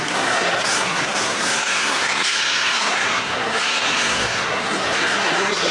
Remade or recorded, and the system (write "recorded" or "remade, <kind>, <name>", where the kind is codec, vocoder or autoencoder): remade, codec, SNAC